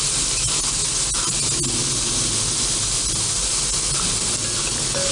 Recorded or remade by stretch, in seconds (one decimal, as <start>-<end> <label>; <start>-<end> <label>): 0.0-5.1 recorded